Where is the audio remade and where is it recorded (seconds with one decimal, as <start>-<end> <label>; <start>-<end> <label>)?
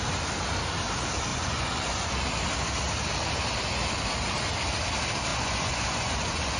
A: 0.0-1.3 recorded; 1.3-2.1 remade; 2.1-5.3 recorded; 5.3-6.6 remade